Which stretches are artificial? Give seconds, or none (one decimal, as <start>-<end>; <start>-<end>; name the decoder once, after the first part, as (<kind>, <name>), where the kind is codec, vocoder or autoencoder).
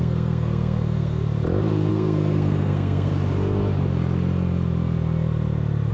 0.0-1.2 (codec, SNAC); 1.9-3.1